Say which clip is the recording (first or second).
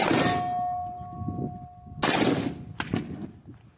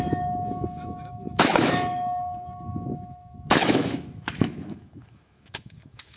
first